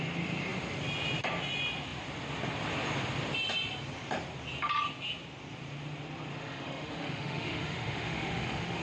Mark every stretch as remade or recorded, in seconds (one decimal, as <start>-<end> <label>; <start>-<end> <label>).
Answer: 0.0-6.3 recorded; 6.3-8.8 remade